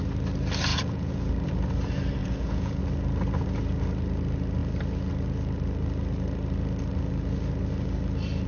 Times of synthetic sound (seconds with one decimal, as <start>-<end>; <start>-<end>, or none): 0.7-1.3; 2.2-2.8